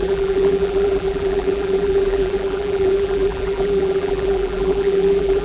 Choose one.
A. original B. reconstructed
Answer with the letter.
B